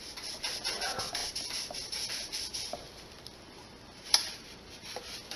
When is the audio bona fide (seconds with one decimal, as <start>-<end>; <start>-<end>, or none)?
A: 0.0-1.2; 2.1-3.7; 5.0-5.4